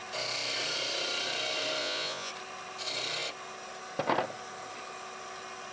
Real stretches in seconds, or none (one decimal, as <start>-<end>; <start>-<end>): 0.0-1.8; 2.3-5.7